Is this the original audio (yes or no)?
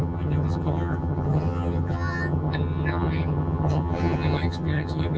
no